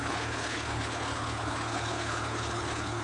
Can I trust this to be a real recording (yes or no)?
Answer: no